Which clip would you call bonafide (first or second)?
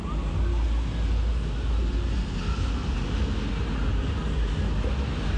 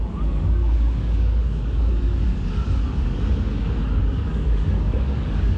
first